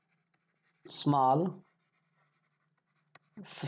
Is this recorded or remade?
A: recorded